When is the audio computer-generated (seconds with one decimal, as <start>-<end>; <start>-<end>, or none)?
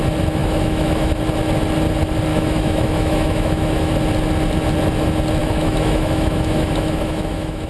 0.4-1.2; 2.3-3.9; 5.4-7.7